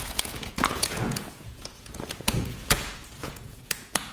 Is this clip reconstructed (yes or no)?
yes